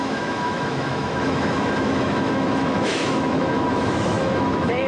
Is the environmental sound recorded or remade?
remade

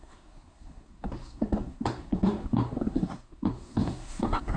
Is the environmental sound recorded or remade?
remade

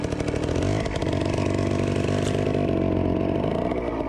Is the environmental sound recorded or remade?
recorded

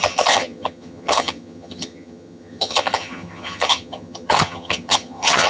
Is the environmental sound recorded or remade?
remade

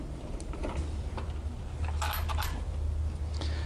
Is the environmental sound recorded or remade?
recorded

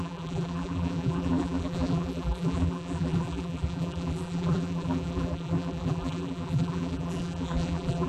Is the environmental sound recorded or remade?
remade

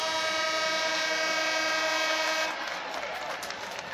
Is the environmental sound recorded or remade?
recorded